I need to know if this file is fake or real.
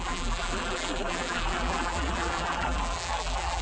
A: fake